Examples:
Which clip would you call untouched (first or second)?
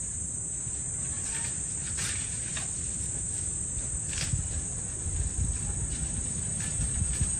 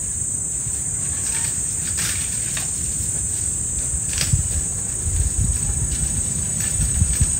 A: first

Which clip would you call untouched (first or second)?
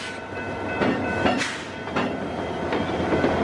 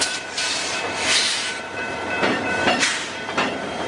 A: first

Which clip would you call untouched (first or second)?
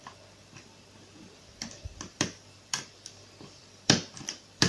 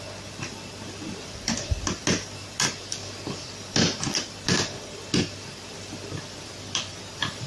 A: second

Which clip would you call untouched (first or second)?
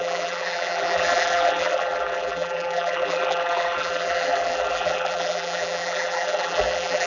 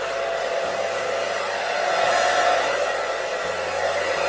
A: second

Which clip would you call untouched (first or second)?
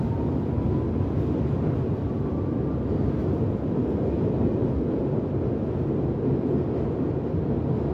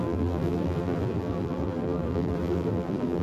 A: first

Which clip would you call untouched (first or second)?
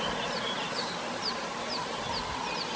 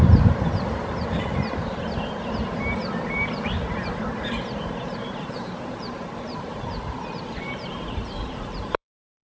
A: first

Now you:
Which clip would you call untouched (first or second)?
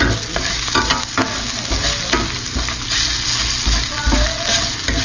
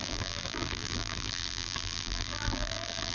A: first